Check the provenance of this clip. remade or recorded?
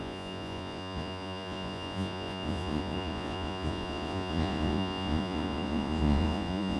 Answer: remade